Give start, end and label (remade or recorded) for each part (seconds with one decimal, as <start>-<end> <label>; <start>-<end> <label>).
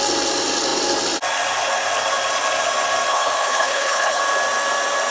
0.0-3.1 recorded; 3.1-4.2 remade; 4.2-5.1 recorded